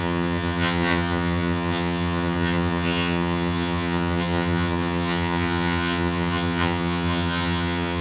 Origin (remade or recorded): remade